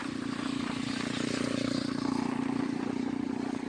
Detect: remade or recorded recorded